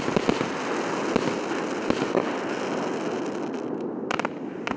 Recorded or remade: recorded